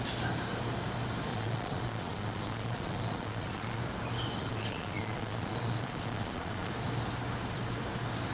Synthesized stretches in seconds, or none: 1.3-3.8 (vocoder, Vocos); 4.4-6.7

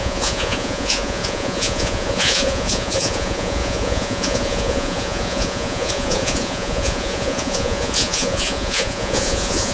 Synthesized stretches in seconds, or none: 0.0-9.7 (vocoder, Vocos)

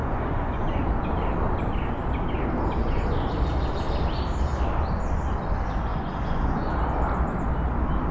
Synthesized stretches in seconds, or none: 0.0-0.9 (vocoder, Vocos); 2.8-3.3; 5.9-6.7